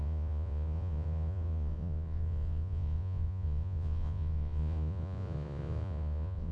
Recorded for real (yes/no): no